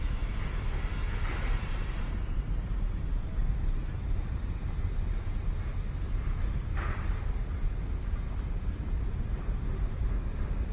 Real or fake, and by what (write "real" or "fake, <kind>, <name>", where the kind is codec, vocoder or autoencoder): fake, vocoder, BigVGAN v2